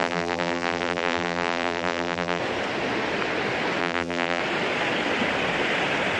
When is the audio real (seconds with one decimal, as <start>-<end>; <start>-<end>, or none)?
2.4-3.8; 4.4-6.2